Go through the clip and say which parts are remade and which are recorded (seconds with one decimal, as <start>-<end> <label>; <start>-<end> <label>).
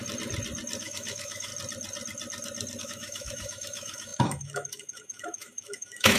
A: 0.0-0.8 recorded; 0.8-1.5 remade; 1.5-2.8 recorded; 2.8-6.2 remade